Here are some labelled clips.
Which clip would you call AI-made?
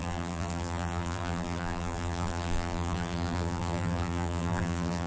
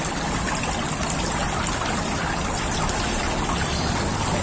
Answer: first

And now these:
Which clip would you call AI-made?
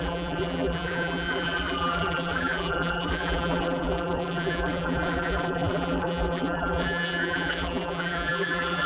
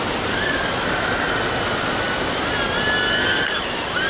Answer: first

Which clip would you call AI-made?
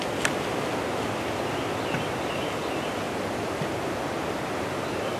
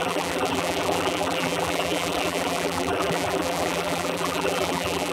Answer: second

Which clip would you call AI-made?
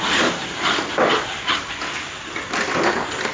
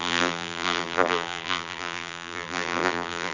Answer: second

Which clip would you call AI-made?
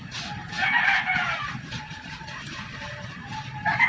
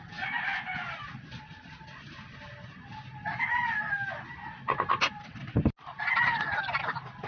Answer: first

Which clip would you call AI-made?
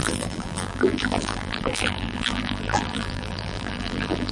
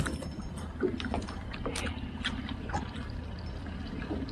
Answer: first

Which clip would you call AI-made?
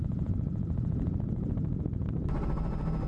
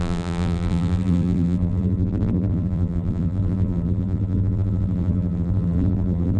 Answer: second